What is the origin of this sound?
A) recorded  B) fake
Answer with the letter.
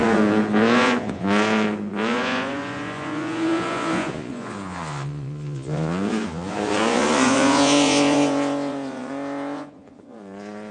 B